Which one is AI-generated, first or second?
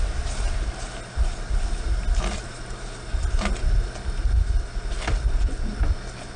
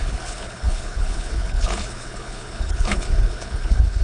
second